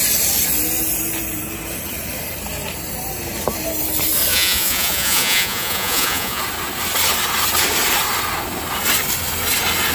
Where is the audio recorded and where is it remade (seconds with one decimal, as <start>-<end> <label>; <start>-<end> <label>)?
0.0-4.3 recorded; 4.3-6.4 remade; 6.4-9.9 recorded